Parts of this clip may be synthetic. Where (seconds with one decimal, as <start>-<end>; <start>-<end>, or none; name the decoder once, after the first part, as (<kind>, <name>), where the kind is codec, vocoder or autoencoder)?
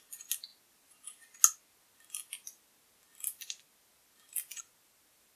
none